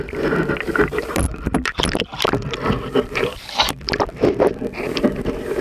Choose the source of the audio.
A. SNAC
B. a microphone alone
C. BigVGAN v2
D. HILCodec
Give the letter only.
C